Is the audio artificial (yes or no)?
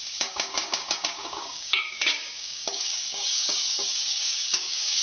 yes